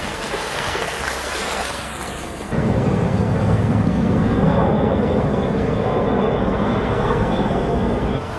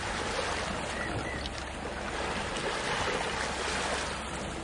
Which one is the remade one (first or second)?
first